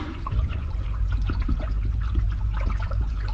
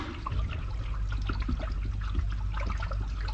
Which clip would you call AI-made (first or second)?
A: first